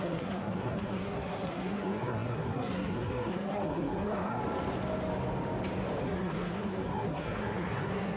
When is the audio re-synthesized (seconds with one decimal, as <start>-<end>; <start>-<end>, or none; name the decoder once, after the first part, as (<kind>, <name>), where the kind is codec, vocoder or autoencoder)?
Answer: 0.0-4.4 (codec, SNAC); 6.0-8.2